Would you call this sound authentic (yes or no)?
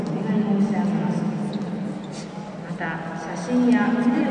yes